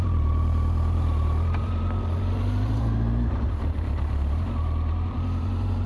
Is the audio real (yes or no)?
no